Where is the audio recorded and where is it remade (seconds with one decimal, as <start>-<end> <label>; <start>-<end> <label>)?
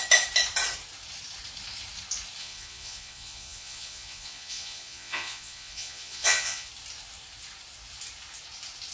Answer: 0.0-2.4 recorded; 2.4-6.7 remade; 6.7-8.9 recorded